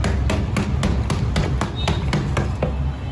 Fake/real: real